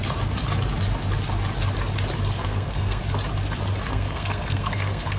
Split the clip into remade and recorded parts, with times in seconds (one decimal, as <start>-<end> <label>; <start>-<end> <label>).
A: 0.0-2.4 recorded; 2.4-3.0 remade; 3.0-3.9 recorded; 3.9-5.2 remade